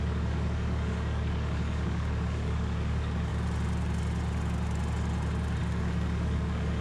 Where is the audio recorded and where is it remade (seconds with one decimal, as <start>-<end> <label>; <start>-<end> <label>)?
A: 0.0-3.3 remade; 3.3-5.6 recorded; 5.6-6.8 remade